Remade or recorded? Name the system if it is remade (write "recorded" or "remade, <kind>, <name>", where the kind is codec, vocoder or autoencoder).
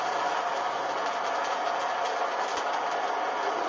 recorded